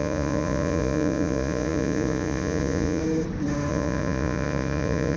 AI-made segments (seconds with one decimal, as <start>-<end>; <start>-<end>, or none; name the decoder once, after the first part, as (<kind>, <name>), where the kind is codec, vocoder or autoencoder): 0.0-3.0 (vocoder, Vocos); 3.7-5.2